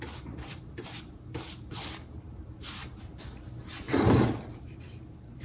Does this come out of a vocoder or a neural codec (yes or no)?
yes